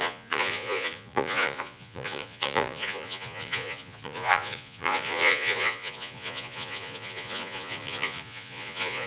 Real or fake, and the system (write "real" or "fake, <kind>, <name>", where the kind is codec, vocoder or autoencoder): fake, vocoder, Vocos